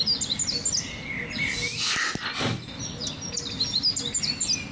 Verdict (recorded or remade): recorded